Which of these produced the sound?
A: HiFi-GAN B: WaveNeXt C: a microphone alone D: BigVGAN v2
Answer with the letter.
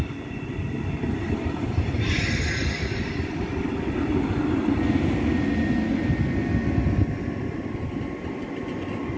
C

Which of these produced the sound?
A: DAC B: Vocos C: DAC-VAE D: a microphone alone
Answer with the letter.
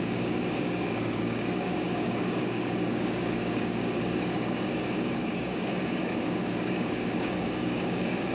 A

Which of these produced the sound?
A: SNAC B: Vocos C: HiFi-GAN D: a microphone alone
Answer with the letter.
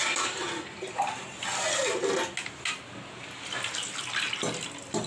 D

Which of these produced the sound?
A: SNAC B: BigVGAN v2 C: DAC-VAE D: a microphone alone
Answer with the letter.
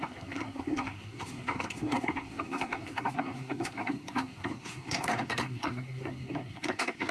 A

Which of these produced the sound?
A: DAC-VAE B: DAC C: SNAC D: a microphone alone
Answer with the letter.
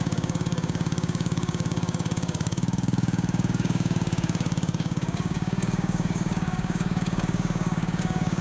B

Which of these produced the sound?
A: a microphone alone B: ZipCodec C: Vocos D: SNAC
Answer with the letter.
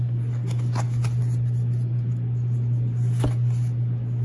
A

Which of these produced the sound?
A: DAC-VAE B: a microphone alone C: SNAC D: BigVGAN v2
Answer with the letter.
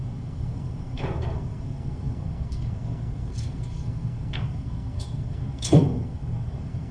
C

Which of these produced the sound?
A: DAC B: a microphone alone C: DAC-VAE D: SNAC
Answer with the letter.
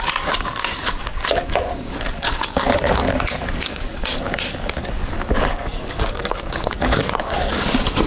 A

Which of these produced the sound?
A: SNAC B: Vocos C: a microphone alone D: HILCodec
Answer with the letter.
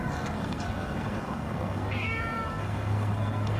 A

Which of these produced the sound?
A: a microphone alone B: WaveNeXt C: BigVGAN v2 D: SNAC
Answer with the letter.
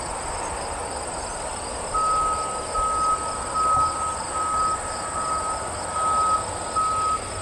A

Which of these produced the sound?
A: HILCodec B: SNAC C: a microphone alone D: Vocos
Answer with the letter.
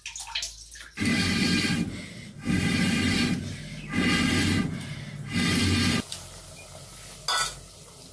C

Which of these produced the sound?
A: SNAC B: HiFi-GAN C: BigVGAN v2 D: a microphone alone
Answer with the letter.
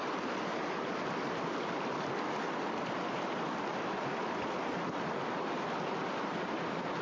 D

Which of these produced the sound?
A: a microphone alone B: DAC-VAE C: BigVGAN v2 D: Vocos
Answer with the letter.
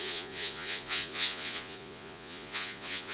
D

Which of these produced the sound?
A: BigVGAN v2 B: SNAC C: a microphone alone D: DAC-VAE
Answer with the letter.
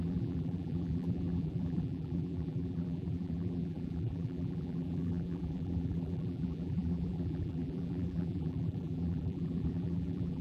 A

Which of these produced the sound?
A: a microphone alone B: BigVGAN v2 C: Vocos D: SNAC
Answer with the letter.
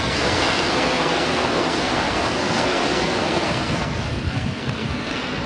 D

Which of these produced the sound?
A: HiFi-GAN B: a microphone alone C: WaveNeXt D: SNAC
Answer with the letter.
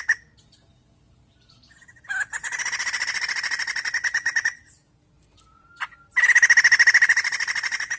B